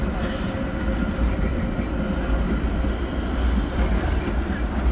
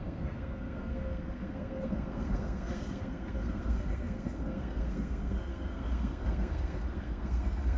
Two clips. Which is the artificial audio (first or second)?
second